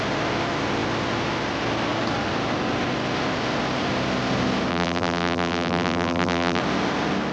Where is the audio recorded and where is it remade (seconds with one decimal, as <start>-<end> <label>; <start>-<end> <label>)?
0.0-4.7 recorded; 4.7-6.6 remade; 6.6-7.3 recorded